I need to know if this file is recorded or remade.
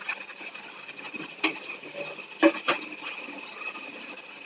recorded